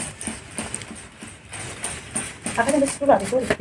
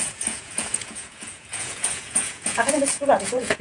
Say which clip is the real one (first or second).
first